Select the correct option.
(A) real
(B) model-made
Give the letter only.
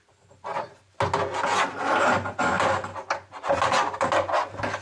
A